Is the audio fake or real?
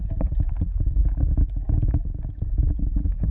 real